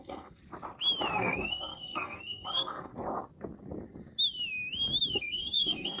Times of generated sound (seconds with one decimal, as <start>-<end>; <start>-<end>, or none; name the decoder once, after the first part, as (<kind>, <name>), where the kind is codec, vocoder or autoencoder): 0.0-0.4 (codec, SNAC); 1.1-2.9; 5.1-6.0